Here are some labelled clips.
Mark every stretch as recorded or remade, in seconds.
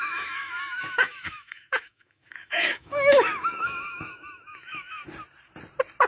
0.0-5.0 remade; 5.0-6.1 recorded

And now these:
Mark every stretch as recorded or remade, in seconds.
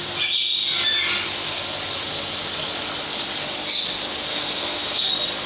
0.0-4.3 recorded; 4.3-5.1 remade; 5.1-5.5 recorded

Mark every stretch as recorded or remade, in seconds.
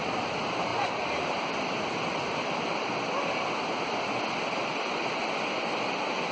0.0-6.3 recorded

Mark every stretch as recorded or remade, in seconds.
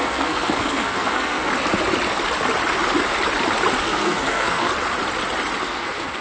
0.0-1.5 remade; 1.5-3.8 recorded; 3.8-4.7 remade; 4.7-5.6 recorded; 5.6-6.2 remade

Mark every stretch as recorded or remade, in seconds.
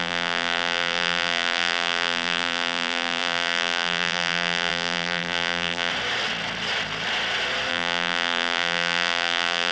0.0-5.9 remade; 5.9-7.7 recorded; 7.7-9.7 remade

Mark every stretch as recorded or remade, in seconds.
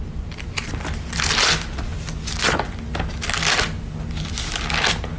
0.0-0.7 remade; 0.7-5.2 recorded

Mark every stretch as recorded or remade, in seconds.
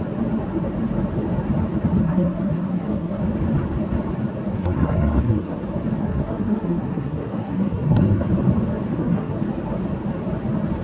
0.0-2.0 recorded; 2.0-3.2 remade; 3.2-4.5 recorded; 4.5-5.6 remade; 5.6-6.0 recorded; 6.0-8.3 remade; 8.3-8.9 recorded; 8.9-9.4 remade; 9.4-10.8 recorded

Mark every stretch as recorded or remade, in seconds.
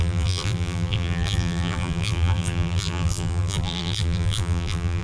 0.0-5.0 remade